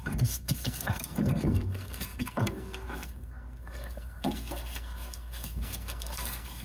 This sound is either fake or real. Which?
fake